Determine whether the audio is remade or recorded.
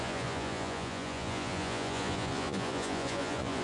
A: remade